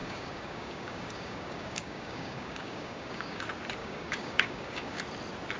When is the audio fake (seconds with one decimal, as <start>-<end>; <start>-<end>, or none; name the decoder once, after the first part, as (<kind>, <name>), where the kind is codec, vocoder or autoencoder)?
0.0-3.4 (codec, DAC); 3.8-5.0